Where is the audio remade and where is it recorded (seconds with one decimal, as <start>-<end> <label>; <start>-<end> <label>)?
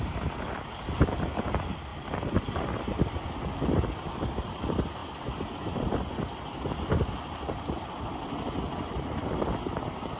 0.0-1.9 remade; 1.9-2.4 recorded; 2.4-5.0 remade; 5.0-6.9 recorded; 6.9-10.2 remade